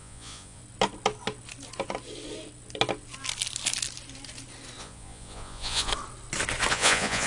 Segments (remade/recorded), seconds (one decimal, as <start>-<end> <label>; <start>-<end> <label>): 0.0-0.6 remade; 0.6-4.8 recorded; 4.8-5.9 remade; 5.9-6.7 recorded; 6.7-7.3 remade